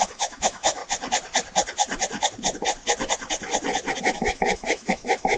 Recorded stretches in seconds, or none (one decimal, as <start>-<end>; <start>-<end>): 0.8-4.0